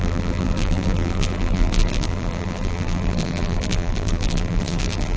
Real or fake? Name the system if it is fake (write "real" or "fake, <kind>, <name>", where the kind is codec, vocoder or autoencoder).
fake, vocoder, BigVGAN v2